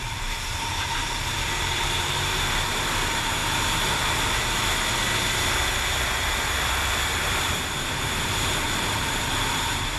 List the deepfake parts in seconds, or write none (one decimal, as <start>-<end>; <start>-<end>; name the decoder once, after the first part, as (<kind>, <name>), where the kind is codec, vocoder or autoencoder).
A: 0.0-3.4 (vocoder, BigVGAN v2); 7.0-10.0